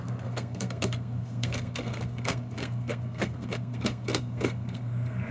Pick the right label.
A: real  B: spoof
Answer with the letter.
B